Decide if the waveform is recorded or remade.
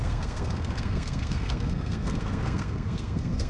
remade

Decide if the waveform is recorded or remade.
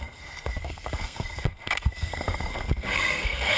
remade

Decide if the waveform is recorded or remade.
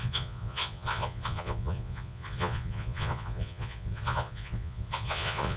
remade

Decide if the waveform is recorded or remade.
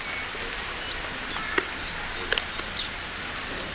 recorded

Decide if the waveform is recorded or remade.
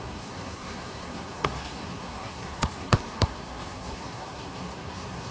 remade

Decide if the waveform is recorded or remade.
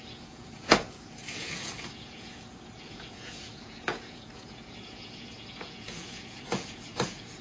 remade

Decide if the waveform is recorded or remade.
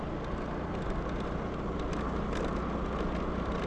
recorded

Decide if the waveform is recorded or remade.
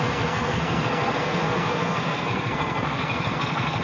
remade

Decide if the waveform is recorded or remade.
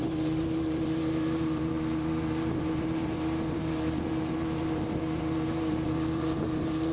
remade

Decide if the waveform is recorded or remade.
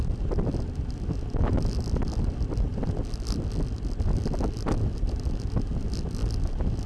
recorded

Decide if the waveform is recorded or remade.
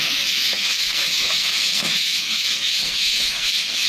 remade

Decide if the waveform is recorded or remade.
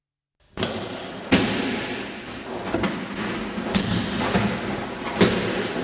recorded